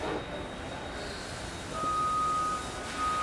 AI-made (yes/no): no